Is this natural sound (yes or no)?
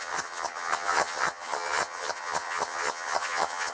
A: no